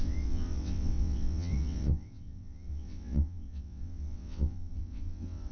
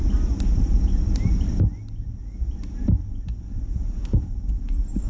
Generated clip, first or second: first